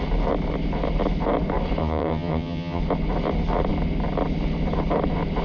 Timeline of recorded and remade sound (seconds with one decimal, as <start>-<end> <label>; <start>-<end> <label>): 0.0-1.8 recorded; 1.8-2.8 remade; 2.8-5.4 recorded